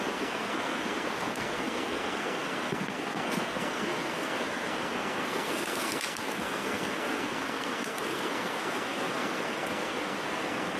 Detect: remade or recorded remade